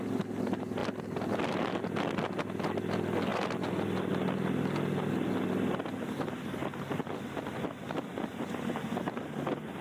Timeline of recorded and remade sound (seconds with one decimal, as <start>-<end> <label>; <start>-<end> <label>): 0.0-9.8 recorded